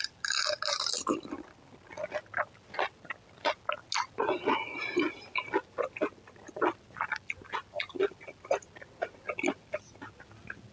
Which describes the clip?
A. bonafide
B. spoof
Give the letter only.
A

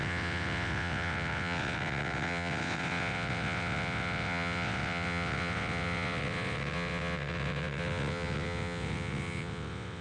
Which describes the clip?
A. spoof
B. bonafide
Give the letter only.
A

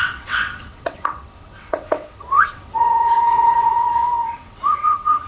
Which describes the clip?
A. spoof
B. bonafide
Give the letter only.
A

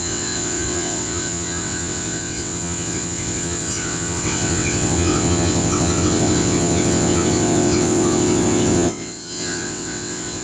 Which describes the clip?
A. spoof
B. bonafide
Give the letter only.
A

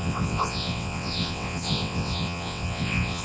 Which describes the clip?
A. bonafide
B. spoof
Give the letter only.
B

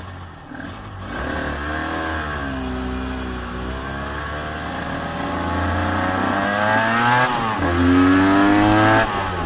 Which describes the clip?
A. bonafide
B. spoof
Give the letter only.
A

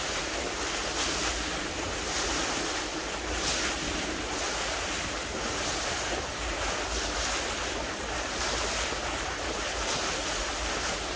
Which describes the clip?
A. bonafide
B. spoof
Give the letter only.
A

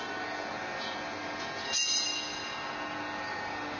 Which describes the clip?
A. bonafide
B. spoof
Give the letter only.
A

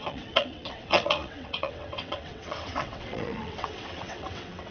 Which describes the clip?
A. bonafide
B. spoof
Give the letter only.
B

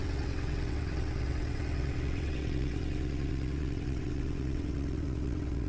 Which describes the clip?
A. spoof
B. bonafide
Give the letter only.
A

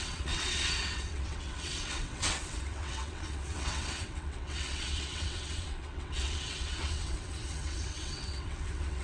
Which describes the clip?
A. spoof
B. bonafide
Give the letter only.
A